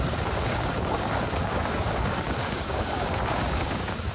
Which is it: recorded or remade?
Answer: remade